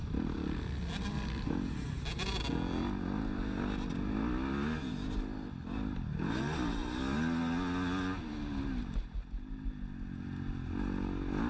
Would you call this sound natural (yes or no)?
yes